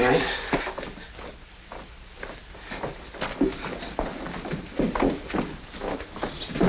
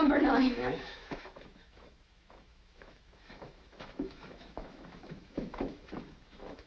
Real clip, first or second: first